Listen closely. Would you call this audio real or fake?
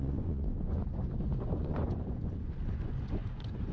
fake